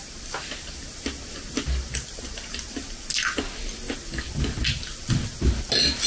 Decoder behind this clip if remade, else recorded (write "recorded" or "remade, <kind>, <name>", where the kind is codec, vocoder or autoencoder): recorded